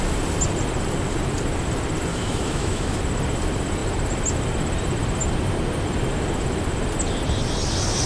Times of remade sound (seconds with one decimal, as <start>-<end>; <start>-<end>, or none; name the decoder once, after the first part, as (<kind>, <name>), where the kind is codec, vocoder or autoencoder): 2.1-3.0 (autoencoder, DAC-VAE)